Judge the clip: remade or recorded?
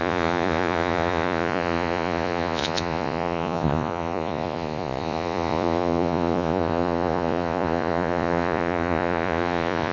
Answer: remade